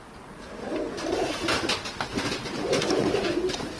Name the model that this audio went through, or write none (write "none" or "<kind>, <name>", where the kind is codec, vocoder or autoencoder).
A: none